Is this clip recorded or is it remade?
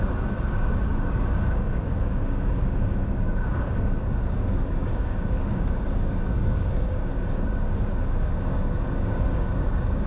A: remade